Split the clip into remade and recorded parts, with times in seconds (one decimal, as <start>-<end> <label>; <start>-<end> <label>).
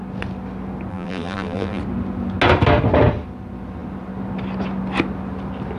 0.0-0.9 recorded; 0.9-1.8 remade; 1.8-5.8 recorded